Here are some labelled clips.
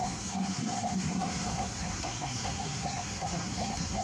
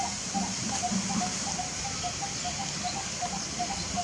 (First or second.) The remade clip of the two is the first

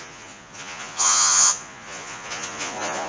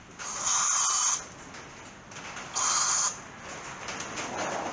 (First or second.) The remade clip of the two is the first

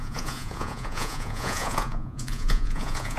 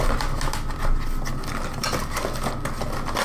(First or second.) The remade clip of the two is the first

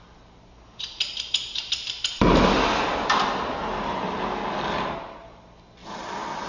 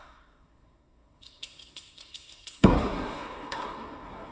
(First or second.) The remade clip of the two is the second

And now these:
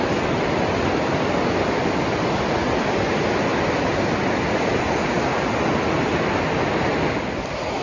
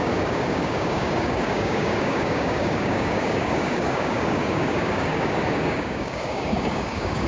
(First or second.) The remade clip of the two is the second